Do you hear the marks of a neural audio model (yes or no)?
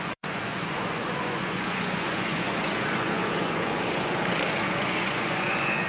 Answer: yes